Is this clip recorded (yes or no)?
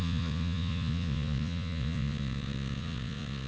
no